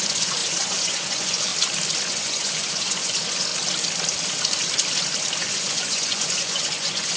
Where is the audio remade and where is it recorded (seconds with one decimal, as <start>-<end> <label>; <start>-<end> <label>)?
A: 0.0-1.5 remade; 1.5-2.1 recorded; 2.1-3.5 remade; 3.5-5.4 recorded; 5.4-7.2 remade